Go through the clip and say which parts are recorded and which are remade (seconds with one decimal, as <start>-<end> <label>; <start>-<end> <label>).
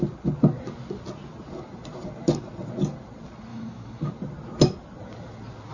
0.0-3.5 recorded; 3.5-4.1 remade; 4.1-5.7 recorded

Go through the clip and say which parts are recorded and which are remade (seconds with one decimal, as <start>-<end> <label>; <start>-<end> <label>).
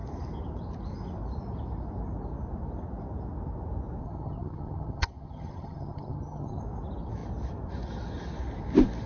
0.0-4.0 recorded; 4.0-6.6 remade; 6.6-9.1 recorded